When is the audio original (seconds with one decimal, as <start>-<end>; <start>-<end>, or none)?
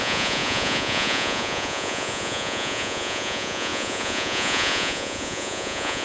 none